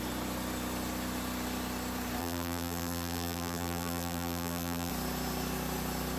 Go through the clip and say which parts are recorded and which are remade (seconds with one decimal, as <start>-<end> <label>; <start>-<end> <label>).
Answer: 0.0-2.2 recorded; 2.2-4.9 remade; 4.9-6.2 recorded